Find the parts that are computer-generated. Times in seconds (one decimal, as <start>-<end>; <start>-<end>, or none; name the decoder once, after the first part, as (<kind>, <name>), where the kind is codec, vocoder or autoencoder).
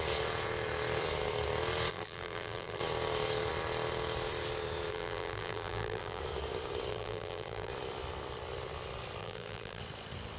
1.9-2.8 (vocoder, BigVGAN v2); 4.9-6.2; 6.9-7.7; 9.2-9.8